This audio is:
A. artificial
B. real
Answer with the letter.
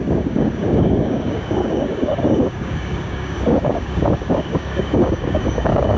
A